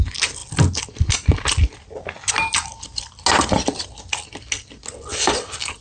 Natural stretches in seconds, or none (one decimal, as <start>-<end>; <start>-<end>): 0.0-5.8